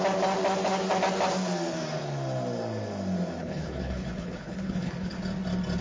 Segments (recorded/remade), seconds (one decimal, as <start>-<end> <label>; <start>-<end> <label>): 0.0-3.4 recorded; 3.4-5.2 remade; 5.2-5.8 recorded